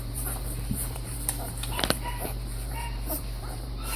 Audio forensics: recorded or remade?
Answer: remade